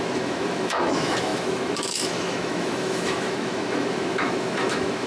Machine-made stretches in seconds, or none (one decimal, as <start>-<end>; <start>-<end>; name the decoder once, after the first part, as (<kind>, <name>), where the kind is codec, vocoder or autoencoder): 0.0-5.1 (autoencoder, DAC-VAE)

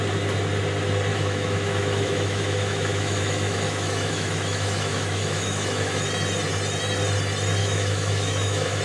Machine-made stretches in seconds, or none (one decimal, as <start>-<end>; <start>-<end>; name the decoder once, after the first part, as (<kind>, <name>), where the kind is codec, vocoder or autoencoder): 1.1-6.0 (autoencoder, DAC-VAE); 7.6-8.8

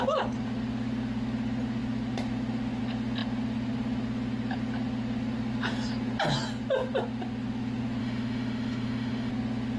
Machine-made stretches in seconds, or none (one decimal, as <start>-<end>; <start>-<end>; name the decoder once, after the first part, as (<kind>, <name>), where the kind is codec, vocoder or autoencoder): 8.0-9.3 (autoencoder, DAC-VAE)

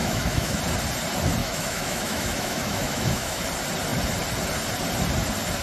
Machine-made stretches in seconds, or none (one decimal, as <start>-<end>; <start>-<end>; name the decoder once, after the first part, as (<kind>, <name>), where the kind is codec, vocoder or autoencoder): 0.0-0.6 (autoencoder, DAC-VAE); 1.4-3.4

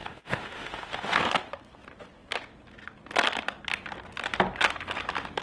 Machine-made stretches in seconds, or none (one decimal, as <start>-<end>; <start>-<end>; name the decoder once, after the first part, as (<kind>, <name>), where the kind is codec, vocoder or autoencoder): 0.0-1.2 (autoencoder, DAC-VAE)

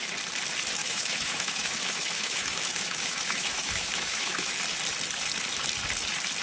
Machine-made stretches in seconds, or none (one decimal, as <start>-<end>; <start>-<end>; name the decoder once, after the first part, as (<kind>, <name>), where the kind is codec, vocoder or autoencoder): 0.8-4.6 (autoencoder, DAC-VAE)

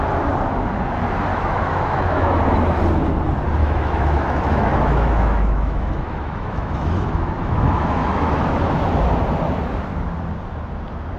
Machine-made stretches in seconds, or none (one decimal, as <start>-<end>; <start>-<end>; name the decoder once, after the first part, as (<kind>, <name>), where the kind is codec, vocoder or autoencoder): 1.3-2.4 (autoencoder, DAC-VAE); 3.6-8.6

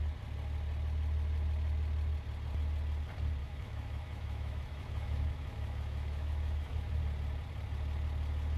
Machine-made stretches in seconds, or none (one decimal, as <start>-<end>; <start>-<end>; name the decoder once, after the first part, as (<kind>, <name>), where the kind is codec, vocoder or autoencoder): 3.4-7.0 (autoencoder, DAC-VAE)